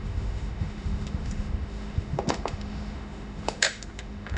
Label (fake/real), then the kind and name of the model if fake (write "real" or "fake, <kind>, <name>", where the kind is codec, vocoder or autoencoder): fake, autoencoder, DAC-VAE